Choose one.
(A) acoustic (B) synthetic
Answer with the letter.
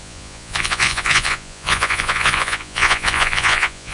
B